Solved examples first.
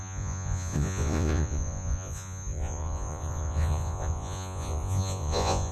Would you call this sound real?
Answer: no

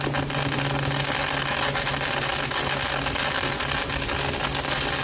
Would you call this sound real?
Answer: yes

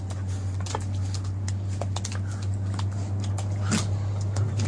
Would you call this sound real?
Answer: yes